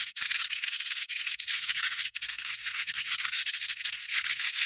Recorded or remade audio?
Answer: remade